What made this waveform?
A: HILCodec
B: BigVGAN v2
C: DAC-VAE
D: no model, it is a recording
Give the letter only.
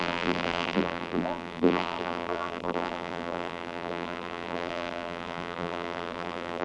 B